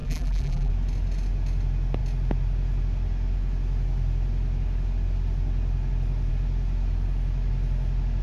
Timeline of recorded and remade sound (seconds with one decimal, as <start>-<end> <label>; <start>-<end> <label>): 0.0-0.7 remade; 0.7-8.2 recorded

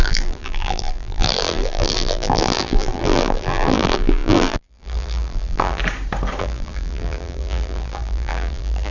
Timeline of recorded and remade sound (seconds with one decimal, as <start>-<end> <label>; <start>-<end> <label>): 0.0-5.8 remade; 5.8-6.4 recorded; 6.4-8.9 remade

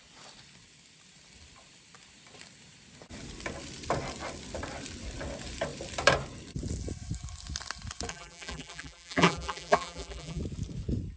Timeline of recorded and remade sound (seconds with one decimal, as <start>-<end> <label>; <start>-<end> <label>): 0.0-8.1 recorded; 8.1-10.4 remade; 10.4-11.2 recorded

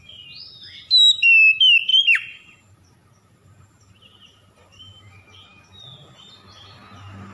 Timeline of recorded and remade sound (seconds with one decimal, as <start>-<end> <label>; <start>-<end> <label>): 0.0-1.9 recorded; 1.9-5.0 remade; 5.0-7.3 recorded

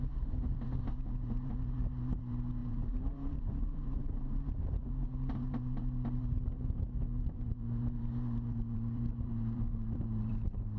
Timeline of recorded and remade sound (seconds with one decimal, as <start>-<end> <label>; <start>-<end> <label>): 0.0-10.8 remade

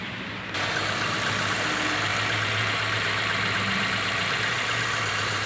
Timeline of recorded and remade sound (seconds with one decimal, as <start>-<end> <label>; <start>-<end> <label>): 0.0-2.1 remade; 2.1-5.5 recorded

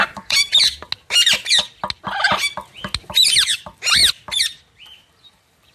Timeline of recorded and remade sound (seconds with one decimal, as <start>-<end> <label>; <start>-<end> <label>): 0.0-0.5 remade; 0.5-3.0 recorded; 3.0-4.0 remade; 4.0-5.2 recorded; 5.2-5.7 remade